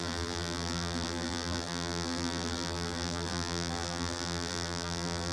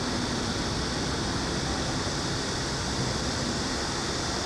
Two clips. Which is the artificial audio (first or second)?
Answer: first